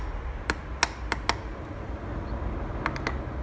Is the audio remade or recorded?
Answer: recorded